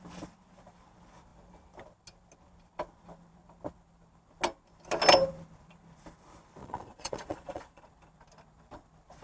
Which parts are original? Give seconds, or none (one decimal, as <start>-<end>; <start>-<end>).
0.0-6.6; 7.8-9.2